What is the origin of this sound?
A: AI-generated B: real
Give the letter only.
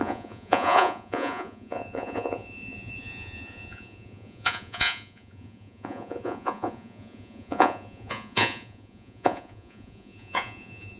A